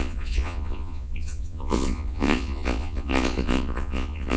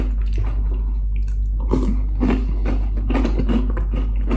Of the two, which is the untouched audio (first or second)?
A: second